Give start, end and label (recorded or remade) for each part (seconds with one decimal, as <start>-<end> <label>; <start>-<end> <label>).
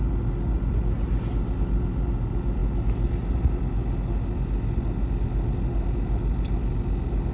0.0-7.3 recorded